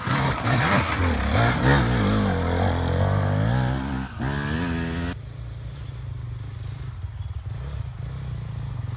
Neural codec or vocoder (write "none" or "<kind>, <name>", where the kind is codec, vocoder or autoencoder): none